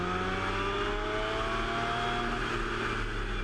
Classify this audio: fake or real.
real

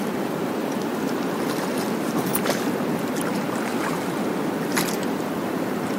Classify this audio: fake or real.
real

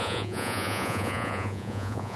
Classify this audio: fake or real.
fake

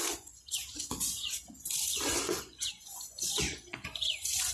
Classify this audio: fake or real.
fake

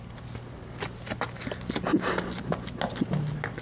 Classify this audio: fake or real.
real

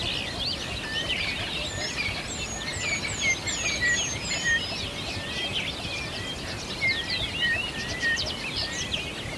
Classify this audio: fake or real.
real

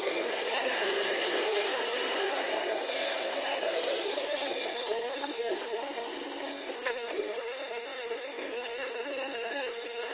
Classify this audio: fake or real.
fake